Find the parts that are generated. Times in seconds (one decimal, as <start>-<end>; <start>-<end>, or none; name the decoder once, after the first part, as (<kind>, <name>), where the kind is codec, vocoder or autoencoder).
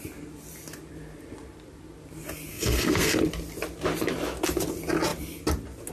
2.5-3.2 (codec, SNAC)